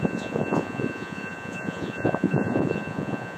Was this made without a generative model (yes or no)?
no